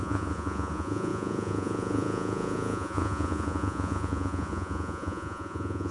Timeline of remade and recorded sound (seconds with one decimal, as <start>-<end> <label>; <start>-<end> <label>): 0.0-5.9 remade